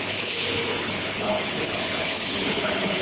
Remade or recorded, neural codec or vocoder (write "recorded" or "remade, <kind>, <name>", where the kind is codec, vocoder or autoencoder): remade, codec, HILCodec